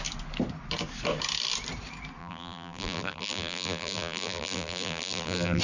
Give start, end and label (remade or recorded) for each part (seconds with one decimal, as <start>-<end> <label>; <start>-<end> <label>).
0.0-2.2 recorded; 2.2-5.6 remade

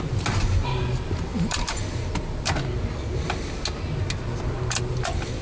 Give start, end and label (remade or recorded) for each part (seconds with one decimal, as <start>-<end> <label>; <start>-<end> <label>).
0.0-5.4 recorded